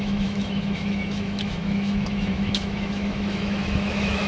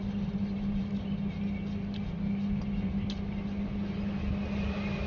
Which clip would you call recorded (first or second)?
second